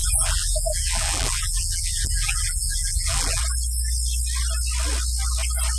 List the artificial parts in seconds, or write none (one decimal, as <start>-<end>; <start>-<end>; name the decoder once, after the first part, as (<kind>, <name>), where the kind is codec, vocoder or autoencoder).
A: 0.0-3.4 (vocoder, BigVGAN v2)